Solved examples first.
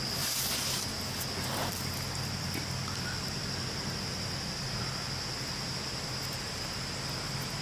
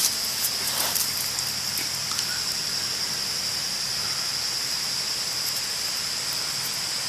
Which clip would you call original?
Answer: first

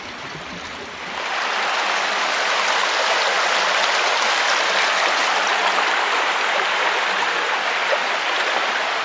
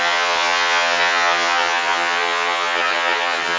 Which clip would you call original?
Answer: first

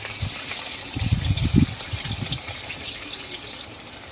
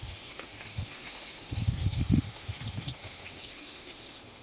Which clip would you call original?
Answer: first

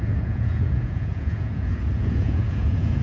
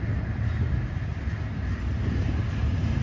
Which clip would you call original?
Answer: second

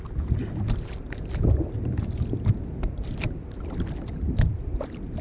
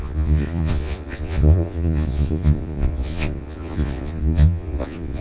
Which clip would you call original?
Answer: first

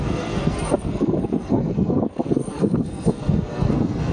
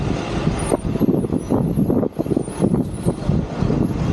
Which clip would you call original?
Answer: second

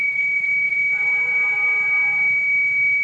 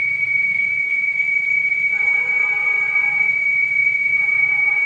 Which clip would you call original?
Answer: first